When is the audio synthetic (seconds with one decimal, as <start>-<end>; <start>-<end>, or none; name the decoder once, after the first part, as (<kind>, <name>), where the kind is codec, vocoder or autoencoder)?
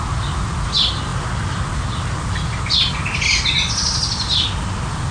none